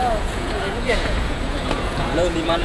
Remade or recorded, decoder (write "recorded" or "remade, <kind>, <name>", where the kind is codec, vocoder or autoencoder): remade, vocoder, Vocos